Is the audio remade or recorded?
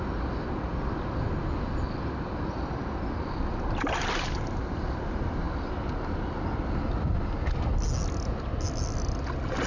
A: recorded